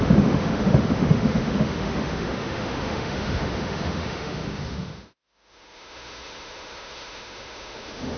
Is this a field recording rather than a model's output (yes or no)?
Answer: no